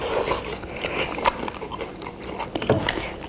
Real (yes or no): yes